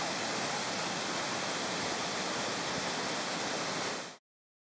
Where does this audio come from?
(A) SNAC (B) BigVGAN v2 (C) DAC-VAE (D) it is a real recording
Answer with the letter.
D